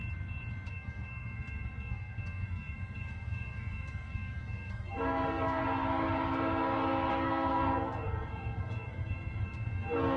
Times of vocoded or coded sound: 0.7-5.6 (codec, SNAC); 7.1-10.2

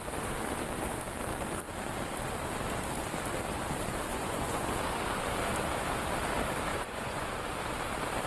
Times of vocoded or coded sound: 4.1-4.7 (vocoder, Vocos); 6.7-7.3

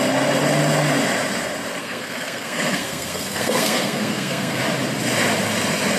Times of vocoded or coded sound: 1.8-4.6 (codec, SNAC)